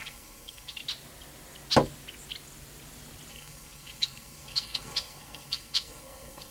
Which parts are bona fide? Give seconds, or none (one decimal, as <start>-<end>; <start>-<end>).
0.8-3.3